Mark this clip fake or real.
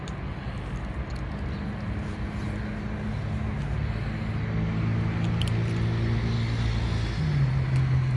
real